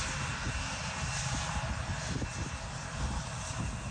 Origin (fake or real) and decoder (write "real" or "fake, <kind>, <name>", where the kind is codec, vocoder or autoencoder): real